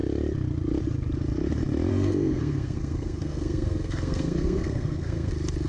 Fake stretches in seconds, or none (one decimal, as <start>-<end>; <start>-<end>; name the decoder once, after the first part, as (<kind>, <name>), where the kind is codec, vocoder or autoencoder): 1.9-5.3 (codec, SNAC)